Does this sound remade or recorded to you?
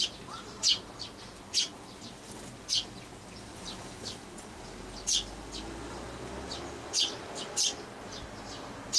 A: recorded